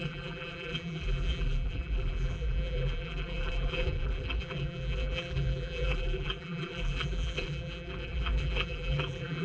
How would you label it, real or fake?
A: fake